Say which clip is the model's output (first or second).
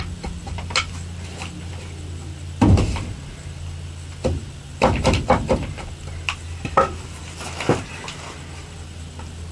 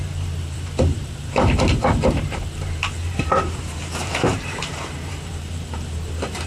second